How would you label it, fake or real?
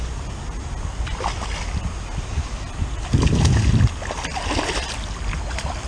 real